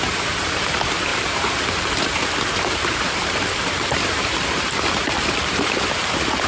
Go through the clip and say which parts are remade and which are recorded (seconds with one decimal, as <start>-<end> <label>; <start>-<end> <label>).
0.0-6.5 remade